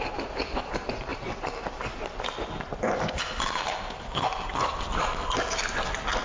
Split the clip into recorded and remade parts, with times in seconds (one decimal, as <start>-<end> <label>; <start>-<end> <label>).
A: 0.0-6.2 recorded